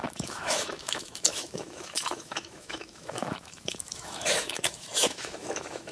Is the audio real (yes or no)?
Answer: no